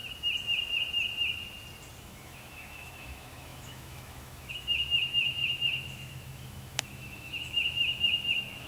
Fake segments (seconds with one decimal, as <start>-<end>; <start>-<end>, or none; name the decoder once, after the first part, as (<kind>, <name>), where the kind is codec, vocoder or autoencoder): 2.0-8.7 (autoencoder, DAC-VAE)